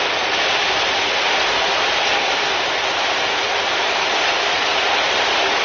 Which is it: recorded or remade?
recorded